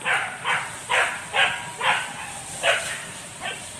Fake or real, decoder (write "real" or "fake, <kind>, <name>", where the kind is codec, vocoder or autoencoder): fake, vocoder, BigVGAN v2